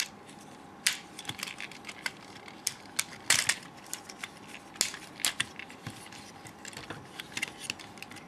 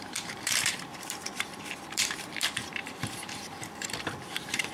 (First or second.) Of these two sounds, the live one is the first